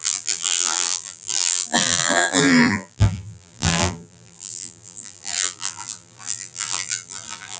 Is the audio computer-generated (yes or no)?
yes